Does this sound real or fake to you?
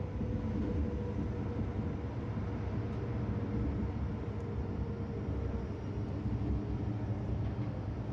real